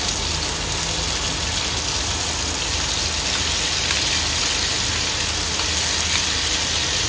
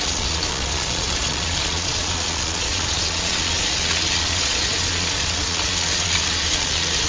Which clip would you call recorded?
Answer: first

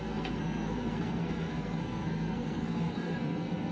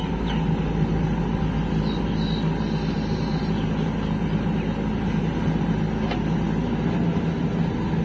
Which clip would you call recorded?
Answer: second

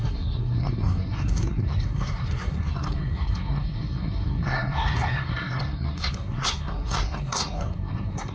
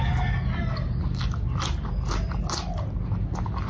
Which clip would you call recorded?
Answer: second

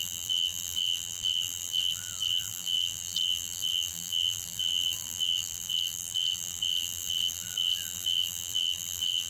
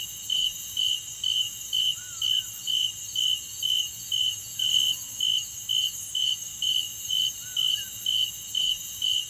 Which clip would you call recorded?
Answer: second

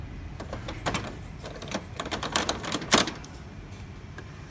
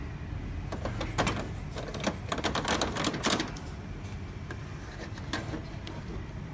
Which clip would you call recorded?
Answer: second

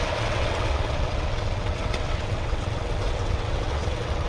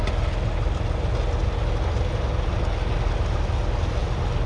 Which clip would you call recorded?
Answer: second